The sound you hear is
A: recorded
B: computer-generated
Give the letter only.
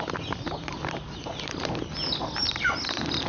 A